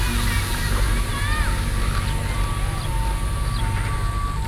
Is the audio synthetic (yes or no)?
no